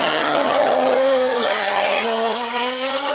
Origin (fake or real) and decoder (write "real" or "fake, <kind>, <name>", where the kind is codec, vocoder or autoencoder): fake, vocoder, HiFi-GAN